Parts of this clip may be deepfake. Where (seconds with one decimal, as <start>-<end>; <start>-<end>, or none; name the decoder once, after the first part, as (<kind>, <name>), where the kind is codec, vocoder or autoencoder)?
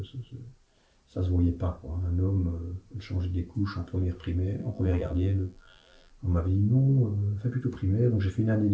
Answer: 4.6-6.1 (vocoder, BigVGAN v2)